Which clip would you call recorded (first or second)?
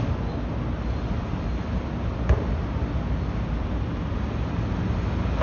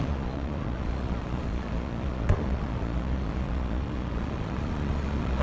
first